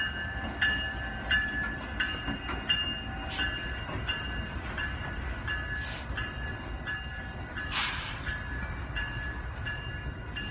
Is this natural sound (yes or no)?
yes